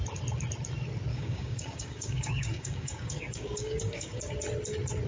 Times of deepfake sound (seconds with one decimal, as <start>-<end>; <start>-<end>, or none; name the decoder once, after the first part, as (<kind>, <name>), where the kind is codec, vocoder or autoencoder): 1.1-4.2 (codec, DAC)